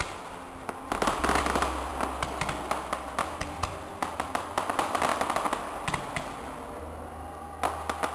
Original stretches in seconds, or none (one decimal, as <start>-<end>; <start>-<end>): 0.0-8.1